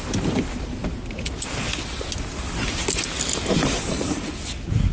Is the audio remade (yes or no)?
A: no